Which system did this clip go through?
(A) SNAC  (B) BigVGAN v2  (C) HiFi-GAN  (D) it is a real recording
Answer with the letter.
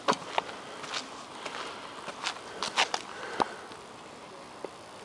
D